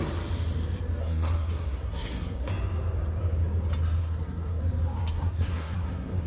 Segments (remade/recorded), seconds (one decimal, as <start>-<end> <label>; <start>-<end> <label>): 0.0-1.0 recorded; 1.0-2.5 remade; 2.5-4.0 recorded; 4.0-4.6 remade; 4.6-5.0 recorded; 5.0-6.3 remade